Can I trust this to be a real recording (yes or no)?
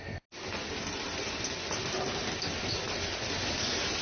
yes